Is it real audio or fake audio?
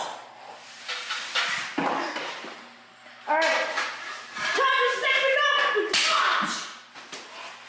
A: real